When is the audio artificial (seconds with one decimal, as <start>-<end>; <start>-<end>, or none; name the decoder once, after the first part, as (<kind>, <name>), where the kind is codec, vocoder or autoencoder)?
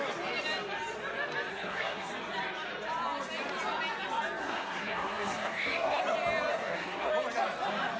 1.5-2.1 (codec, SNAC); 4.4-6.0; 6.5-7.1